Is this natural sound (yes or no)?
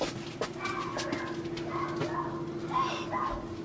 yes